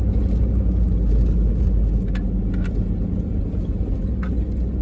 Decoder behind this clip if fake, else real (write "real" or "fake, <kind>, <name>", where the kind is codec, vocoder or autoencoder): real